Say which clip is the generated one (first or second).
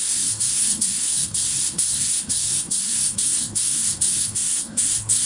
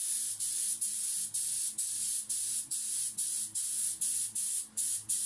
first